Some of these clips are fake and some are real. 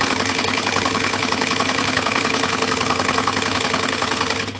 fake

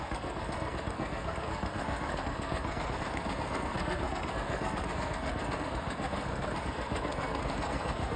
fake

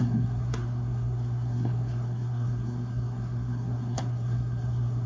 fake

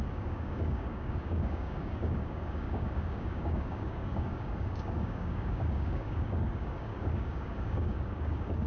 fake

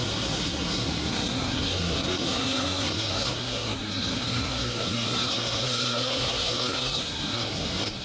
fake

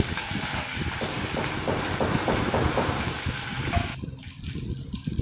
real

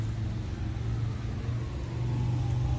real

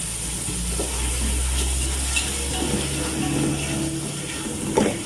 real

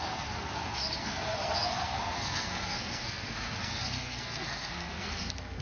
fake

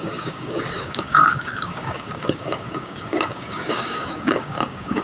fake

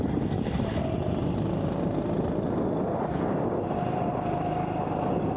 real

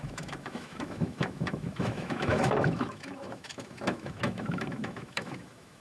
fake